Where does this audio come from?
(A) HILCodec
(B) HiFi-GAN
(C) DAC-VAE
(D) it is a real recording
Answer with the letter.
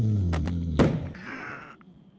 D